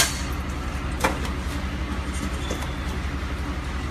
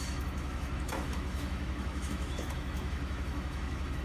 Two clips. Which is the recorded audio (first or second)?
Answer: first